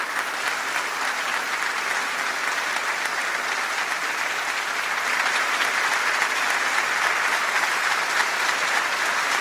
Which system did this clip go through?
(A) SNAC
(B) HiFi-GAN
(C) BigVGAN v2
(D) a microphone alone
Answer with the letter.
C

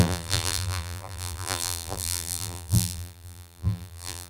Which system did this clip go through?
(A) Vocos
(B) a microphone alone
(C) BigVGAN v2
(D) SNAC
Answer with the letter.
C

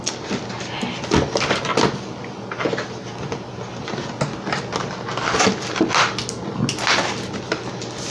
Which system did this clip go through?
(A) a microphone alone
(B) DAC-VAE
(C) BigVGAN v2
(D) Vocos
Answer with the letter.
A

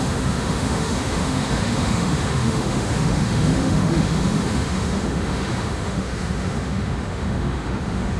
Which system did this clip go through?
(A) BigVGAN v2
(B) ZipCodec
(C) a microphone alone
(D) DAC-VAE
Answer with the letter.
D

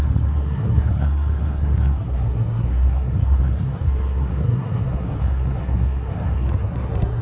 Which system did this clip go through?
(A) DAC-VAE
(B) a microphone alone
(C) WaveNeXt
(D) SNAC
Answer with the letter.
D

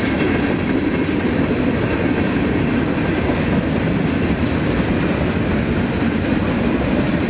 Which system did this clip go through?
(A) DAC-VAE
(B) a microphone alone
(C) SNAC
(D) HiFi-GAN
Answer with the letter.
B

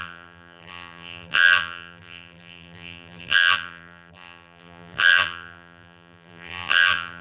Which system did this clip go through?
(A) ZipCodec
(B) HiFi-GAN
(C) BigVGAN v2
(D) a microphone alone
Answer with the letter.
C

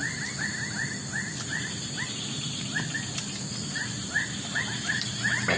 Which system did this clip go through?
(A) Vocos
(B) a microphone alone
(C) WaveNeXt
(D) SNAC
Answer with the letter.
B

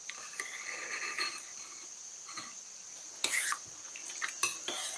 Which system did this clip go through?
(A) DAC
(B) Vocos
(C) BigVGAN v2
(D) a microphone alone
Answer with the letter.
C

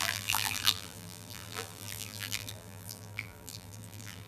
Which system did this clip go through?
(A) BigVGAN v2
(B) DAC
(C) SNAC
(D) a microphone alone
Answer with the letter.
A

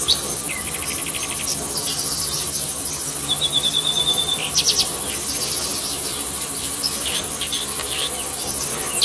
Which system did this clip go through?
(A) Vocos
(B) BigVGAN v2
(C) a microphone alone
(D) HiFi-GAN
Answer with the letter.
B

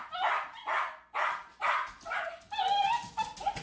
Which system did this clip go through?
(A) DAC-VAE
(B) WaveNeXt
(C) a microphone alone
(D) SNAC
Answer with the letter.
C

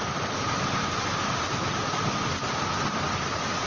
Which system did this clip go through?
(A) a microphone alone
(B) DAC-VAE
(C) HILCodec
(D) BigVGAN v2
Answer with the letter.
A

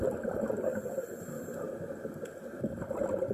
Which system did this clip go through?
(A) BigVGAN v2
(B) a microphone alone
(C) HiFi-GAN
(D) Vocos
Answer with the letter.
B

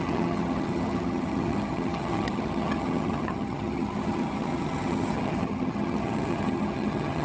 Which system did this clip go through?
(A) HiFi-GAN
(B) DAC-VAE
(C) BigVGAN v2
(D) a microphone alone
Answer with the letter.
A